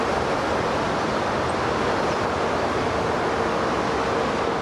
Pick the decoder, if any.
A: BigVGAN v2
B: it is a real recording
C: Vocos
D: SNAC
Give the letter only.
B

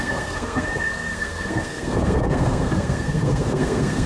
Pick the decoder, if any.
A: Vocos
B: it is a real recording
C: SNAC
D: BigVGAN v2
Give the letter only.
C